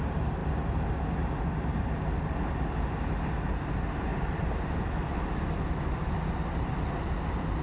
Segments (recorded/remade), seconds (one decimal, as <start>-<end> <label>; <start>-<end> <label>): 0.0-7.6 recorded